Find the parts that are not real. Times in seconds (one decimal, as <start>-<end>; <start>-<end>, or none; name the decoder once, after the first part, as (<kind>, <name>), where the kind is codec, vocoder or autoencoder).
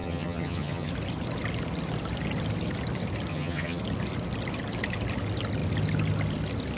0.0-0.9 (vocoder, HiFi-GAN); 3.3-3.8